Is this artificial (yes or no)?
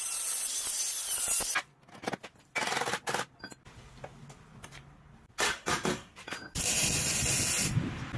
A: no